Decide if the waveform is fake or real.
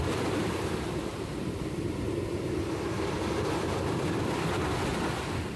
fake